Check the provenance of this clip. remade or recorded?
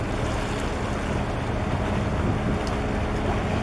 recorded